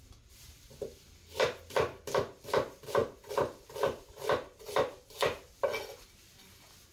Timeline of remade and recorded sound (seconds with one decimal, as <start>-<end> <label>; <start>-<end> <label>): 0.0-6.9 recorded